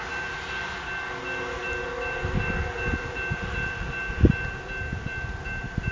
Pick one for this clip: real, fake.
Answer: real